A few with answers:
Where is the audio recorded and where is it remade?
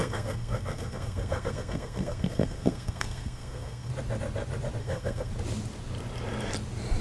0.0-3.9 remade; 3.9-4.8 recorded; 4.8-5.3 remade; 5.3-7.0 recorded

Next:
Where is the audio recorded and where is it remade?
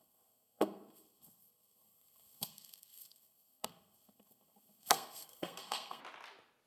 0.0-6.0 remade; 6.0-6.7 recorded